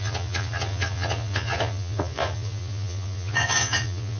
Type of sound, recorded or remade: remade